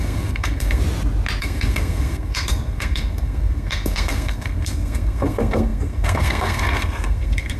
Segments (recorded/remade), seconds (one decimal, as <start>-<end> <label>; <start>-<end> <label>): 0.0-0.8 remade; 0.8-1.4 recorded; 1.4-7.6 remade